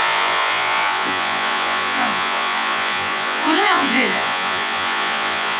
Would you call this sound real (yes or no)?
no